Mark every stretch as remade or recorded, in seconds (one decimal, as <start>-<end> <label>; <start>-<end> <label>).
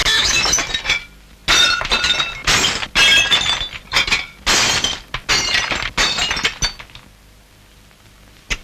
0.0-0.7 remade; 0.7-8.6 recorded